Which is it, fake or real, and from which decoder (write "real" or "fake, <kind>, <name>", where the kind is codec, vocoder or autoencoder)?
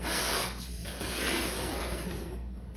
fake, codec, SNAC